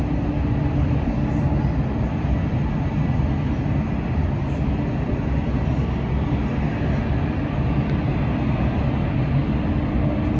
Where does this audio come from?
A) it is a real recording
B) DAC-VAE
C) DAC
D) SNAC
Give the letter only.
A